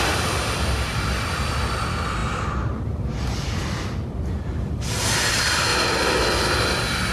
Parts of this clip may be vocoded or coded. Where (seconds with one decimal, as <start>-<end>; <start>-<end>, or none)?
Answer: 0.0-5.7